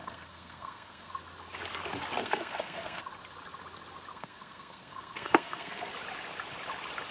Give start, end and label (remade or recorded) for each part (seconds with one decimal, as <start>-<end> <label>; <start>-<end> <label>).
0.0-1.1 remade; 1.1-2.2 recorded; 2.2-3.0 remade; 3.0-4.1 recorded; 4.1-5.9 remade; 5.9-7.1 recorded